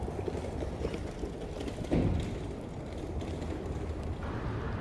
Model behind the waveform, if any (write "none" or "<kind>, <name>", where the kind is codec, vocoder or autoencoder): none